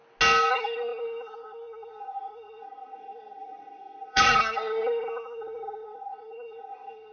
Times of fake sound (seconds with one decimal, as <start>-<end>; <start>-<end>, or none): 0.5-7.1